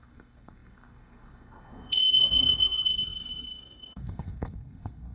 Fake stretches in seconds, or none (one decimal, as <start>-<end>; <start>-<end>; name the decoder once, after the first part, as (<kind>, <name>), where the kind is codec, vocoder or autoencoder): 0.0-5.1 (codec, SNAC)

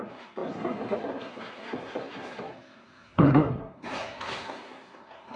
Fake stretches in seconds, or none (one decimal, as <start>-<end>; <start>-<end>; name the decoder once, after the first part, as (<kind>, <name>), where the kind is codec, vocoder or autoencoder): 0.0-5.4 (codec, SNAC)

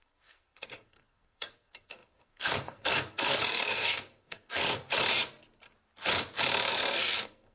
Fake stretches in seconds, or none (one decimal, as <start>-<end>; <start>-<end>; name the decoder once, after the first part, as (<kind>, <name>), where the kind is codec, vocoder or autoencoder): 0.0-4.9 (codec, SNAC); 6.7-7.5

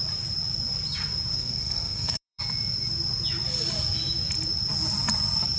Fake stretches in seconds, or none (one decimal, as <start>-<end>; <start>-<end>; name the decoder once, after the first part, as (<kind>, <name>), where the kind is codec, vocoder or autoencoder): 1.3-2.4 (codec, SNAC)